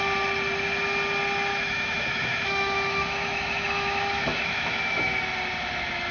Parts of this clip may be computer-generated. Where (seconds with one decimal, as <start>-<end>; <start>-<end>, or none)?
1.5-5.2